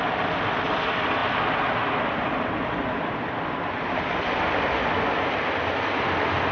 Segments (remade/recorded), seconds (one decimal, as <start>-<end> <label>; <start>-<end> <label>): 0.0-6.5 recorded

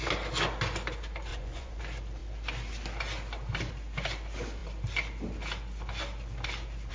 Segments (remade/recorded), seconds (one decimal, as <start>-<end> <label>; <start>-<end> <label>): 0.0-1.3 recorded; 1.3-1.8 remade; 1.8-6.9 recorded

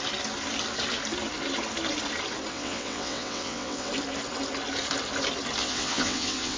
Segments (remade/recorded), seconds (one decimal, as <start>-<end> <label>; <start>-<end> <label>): 0.0-2.5 recorded; 2.5-3.9 remade; 3.9-5.6 recorded; 5.6-6.6 remade

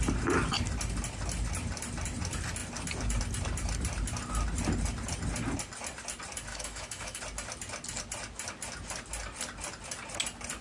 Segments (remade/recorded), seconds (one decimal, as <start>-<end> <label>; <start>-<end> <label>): 0.0-6.5 recorded; 6.5-7.2 remade; 7.2-10.6 recorded

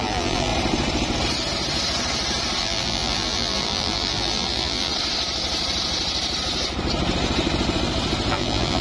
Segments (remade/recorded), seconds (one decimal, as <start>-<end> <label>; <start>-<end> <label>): 0.0-0.5 remade; 0.5-2.6 recorded; 2.6-4.9 remade; 4.9-8.3 recorded; 8.3-8.8 remade

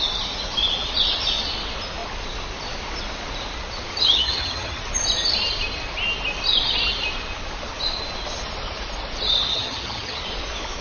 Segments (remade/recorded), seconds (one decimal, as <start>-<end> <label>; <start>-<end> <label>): 0.0-3.9 recorded; 3.9-4.8 remade; 4.8-9.5 recorded; 9.5-10.2 remade; 10.2-10.8 recorded

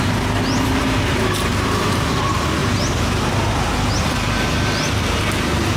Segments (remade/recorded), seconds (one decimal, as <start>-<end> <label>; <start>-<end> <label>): 0.0-1.5 recorded; 1.5-2.1 remade; 2.1-5.8 recorded